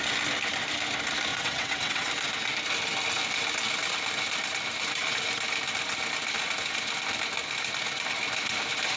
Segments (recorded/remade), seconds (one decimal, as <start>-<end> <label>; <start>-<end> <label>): 0.0-1.3 recorded; 1.3-2.1 remade; 2.1-9.0 recorded